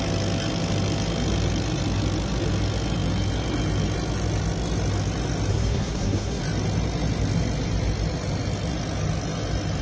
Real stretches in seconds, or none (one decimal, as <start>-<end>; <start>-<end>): 0.0-5.5; 6.4-9.8